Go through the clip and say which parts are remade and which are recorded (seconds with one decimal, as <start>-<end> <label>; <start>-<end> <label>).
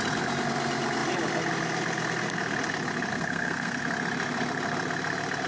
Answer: 0.0-3.1 recorded; 3.1-3.8 remade; 3.8-5.5 recorded